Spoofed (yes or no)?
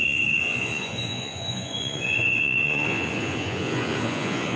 yes